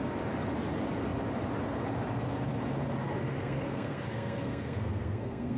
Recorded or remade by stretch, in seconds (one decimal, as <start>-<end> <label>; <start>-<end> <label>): 0.0-3.3 recorded; 3.3-5.6 remade